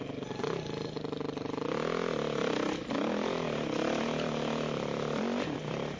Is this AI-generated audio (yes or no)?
no